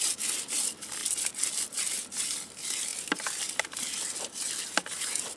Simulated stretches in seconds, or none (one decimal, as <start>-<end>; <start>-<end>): none